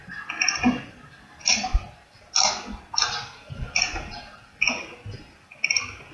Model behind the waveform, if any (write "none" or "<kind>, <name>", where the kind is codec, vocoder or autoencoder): none